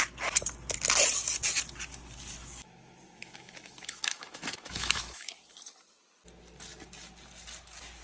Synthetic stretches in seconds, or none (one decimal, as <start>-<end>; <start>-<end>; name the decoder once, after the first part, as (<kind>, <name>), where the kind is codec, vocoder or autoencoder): 2.4-5.3 (autoencoder, DAC-VAE)